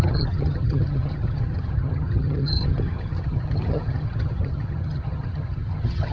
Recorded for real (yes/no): no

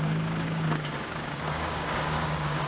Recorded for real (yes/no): no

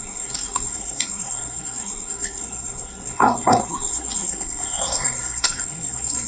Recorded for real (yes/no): no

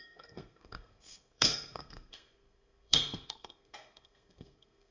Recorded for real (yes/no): no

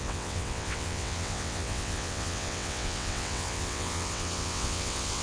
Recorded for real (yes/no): no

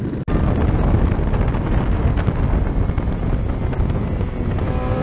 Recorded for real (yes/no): yes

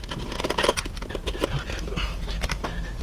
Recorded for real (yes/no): yes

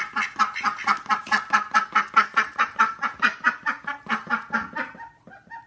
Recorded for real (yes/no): yes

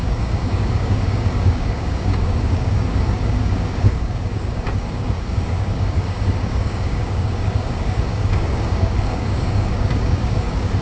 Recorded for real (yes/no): no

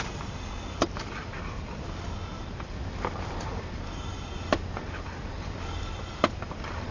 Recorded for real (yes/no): yes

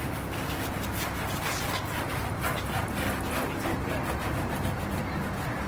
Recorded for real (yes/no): yes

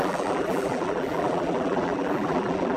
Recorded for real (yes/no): no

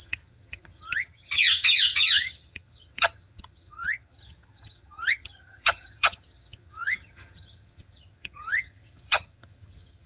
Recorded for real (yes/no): no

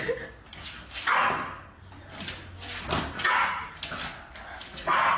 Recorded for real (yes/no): yes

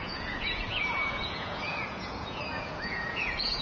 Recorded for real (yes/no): no